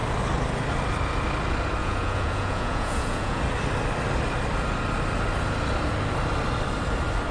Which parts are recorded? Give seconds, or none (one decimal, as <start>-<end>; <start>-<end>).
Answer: 0.0-1.8; 3.4-7.3